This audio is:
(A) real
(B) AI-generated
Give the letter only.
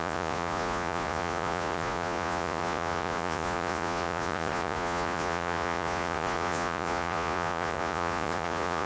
B